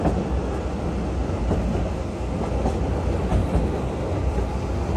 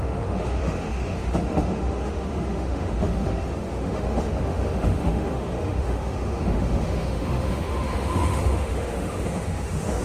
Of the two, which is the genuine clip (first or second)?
first